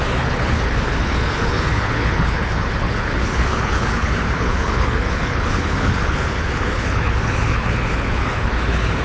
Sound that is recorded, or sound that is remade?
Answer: remade